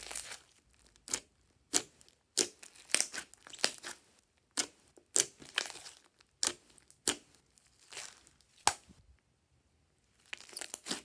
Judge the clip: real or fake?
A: real